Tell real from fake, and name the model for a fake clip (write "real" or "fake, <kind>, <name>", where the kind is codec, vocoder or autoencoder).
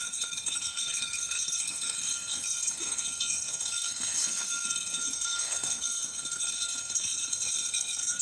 fake, codec, SNAC